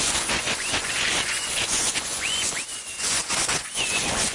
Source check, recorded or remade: remade